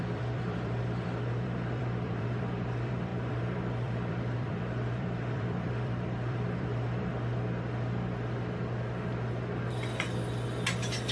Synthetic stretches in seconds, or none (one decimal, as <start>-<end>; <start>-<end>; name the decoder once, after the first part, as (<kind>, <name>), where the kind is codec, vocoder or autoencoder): 0.0-7.1 (vocoder, BigVGAN v2)